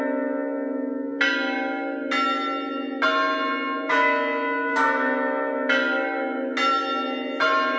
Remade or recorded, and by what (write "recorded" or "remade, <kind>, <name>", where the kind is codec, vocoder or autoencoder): recorded